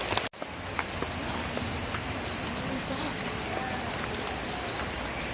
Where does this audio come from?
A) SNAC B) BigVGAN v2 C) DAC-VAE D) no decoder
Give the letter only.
D